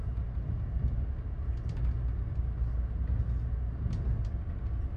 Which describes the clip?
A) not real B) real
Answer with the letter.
B